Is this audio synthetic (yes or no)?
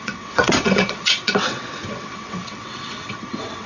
yes